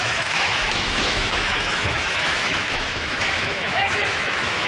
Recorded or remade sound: remade